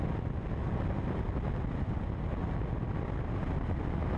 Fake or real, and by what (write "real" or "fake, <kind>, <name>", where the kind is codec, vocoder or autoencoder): real